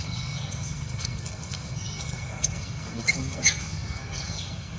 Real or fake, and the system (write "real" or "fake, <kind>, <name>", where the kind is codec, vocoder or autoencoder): fake, codec, SNAC